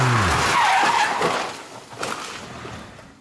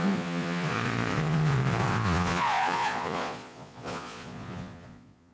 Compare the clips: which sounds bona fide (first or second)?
first